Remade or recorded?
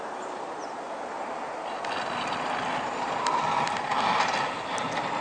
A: recorded